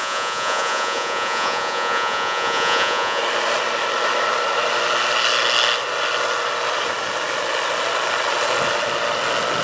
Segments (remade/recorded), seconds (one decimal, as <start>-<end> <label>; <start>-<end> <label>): 0.0-3.2 remade; 3.2-9.6 recorded